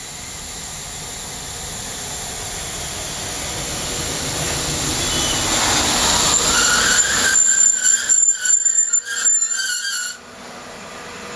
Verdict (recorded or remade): recorded